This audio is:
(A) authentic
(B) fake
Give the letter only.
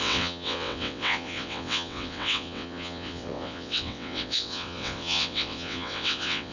B